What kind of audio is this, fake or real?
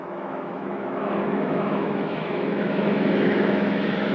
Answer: fake